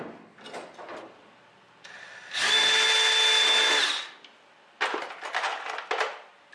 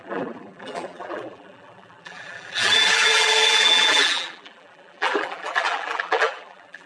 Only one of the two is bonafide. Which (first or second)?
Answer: first